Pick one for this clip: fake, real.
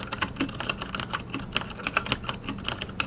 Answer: real